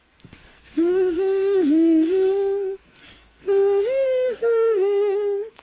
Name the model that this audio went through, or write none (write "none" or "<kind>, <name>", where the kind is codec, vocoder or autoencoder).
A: codec, SNAC